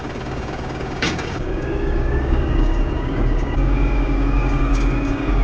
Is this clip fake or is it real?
fake